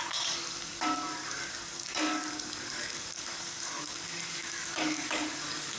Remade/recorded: remade